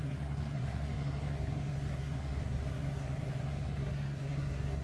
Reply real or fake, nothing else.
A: fake